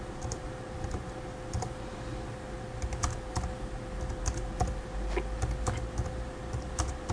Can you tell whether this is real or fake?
real